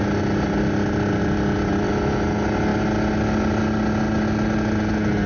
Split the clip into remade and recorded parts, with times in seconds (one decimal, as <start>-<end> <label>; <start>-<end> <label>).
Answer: 0.0-5.3 recorded

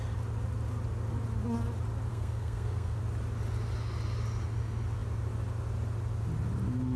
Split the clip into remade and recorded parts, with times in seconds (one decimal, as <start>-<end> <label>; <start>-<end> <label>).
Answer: 0.0-2.1 recorded; 2.1-3.0 remade; 3.0-7.0 recorded

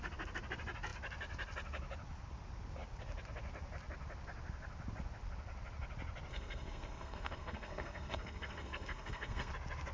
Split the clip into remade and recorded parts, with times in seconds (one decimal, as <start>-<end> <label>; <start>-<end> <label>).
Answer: 0.0-6.3 recorded; 6.3-9.5 remade; 9.5-9.9 recorded

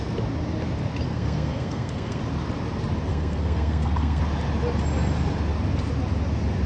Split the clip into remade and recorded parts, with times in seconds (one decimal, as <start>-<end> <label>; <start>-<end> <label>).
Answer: 0.0-1.1 recorded; 1.1-2.2 remade; 2.2-3.1 recorded; 3.1-4.2 remade; 4.2-6.7 recorded